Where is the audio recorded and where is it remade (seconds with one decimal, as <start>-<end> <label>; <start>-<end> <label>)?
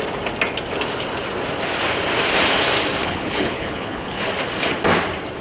0.0-3.0 recorded; 3.0-4.3 remade; 4.3-5.4 recorded